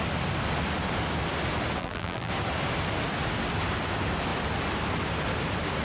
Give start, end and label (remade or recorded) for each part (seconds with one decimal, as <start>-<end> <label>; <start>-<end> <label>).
0.0-1.8 recorded; 1.8-2.3 remade; 2.3-5.8 recorded

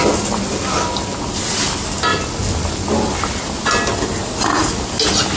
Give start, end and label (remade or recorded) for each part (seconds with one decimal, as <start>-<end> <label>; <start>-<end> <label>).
0.0-5.4 recorded

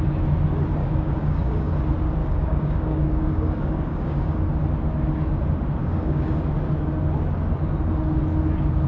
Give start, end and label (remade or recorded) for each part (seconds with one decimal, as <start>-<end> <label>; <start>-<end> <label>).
0.0-0.8 recorded; 0.8-1.7 remade; 1.7-2.2 recorded; 2.2-4.4 remade; 4.4-5.8 recorded; 5.8-6.4 remade; 6.4-8.9 recorded

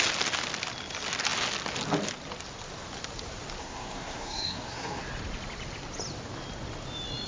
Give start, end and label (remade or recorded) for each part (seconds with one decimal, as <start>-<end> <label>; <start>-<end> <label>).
0.0-3.6 recorded; 3.6-5.0 remade; 5.0-7.3 recorded

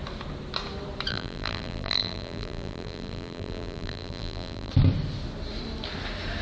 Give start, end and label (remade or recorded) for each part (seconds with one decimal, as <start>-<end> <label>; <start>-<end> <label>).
0.0-1.1 recorded; 1.1-4.7 remade; 4.7-6.4 recorded

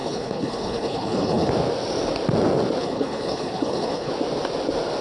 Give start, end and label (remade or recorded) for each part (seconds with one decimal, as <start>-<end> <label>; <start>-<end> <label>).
0.0-1.5 remade; 1.5-2.8 recorded; 2.8-4.1 remade; 4.1-5.0 recorded

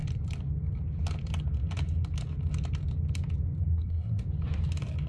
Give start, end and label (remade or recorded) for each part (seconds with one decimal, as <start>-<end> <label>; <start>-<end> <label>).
0.0-3.6 recorded; 3.6-4.2 remade; 4.2-5.1 recorded

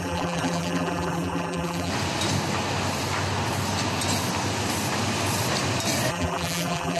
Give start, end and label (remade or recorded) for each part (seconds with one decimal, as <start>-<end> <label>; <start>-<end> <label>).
0.0-1.9 remade; 1.9-6.1 recorded; 6.1-7.0 remade